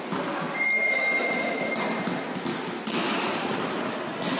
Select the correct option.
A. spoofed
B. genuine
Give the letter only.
B